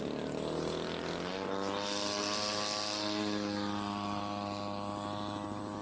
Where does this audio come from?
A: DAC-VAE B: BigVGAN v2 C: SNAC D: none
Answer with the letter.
D